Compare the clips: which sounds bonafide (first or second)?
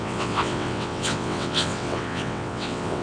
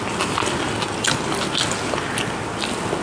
second